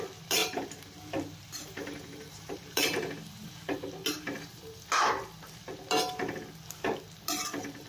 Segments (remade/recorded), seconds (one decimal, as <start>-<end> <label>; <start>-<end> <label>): 0.0-0.4 recorded; 0.4-1.0 remade; 1.0-1.6 recorded; 1.6-3.0 remade; 3.0-7.9 recorded